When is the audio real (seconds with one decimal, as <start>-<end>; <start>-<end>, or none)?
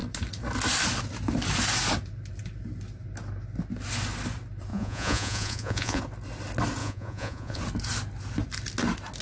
0.0-4.7; 6.0-6.8; 7.6-9.2